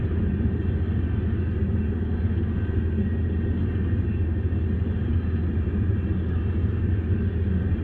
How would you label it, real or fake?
real